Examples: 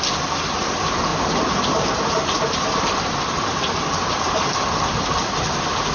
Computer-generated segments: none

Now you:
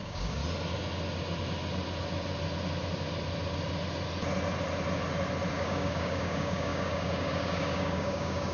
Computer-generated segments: 0.0-0.4 (codec, DAC); 5.5-8.5

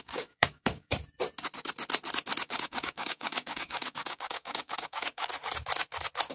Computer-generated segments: 0.0-0.9 (codec, DAC); 2.5-5.3

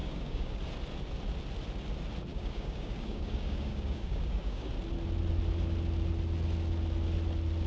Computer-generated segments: 0.0-0.6 (codec, DAC); 2.3-4.7